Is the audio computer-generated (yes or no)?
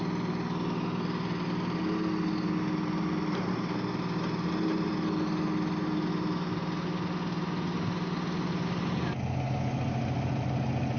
no